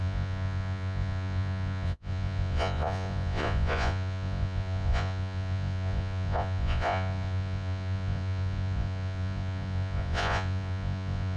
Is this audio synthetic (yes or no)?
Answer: yes